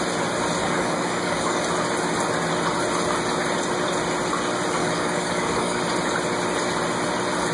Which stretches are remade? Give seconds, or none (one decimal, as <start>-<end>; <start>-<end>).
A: 0.6-1.6; 4.8-5.8